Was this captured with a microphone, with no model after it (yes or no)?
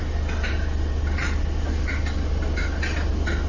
yes